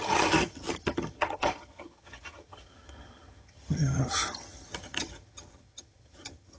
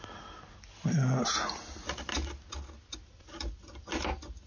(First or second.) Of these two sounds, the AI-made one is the first